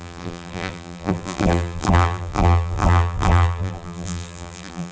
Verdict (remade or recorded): remade